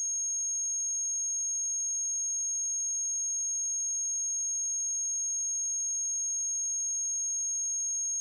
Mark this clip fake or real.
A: real